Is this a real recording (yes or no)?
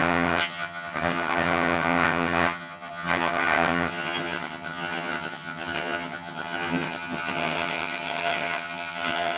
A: no